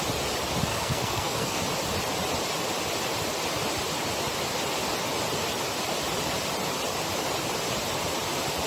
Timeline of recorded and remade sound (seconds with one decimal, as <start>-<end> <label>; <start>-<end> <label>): 0.0-0.7 recorded; 0.7-1.6 remade; 1.6-8.7 recorded